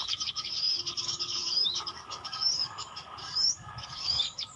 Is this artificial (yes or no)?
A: yes